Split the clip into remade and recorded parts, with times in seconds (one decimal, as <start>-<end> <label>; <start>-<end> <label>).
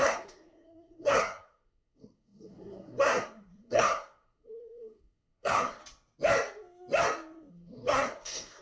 0.0-5.8 remade; 5.8-7.5 recorded; 7.5-8.6 remade